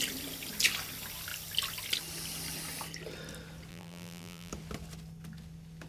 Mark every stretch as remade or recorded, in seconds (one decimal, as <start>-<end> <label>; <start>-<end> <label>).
0.0-3.7 recorded; 3.7-4.5 remade; 4.5-5.9 recorded